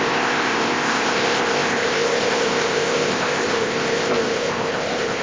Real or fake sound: fake